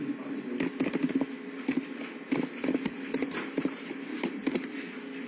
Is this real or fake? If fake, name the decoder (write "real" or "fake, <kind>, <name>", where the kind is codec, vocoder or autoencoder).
real